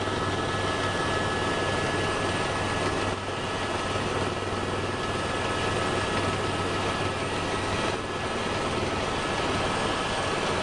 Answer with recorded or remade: recorded